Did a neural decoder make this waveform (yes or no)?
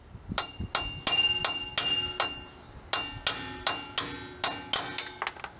no